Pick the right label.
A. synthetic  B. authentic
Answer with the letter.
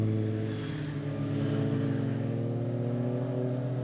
B